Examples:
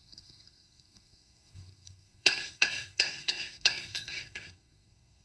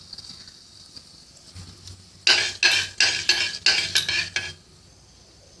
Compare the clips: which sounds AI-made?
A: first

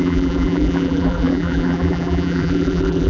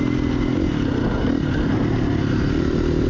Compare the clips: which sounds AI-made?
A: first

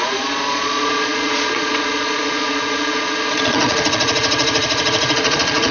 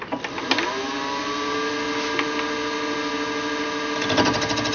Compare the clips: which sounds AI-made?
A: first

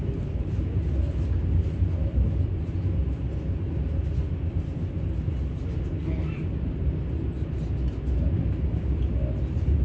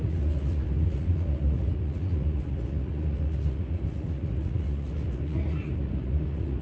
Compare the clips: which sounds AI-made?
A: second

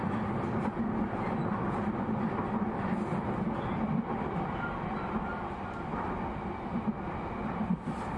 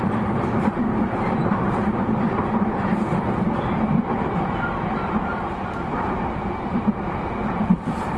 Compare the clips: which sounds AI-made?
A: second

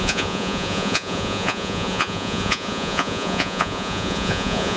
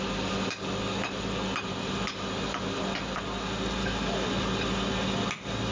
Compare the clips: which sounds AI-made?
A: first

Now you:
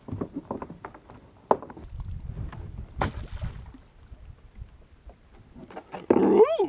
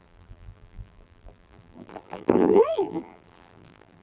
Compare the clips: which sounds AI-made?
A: second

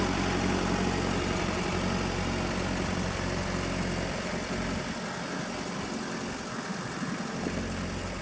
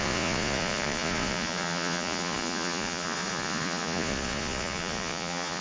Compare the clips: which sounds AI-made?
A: second